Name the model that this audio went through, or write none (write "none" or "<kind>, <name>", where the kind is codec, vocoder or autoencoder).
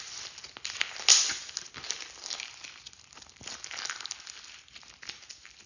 none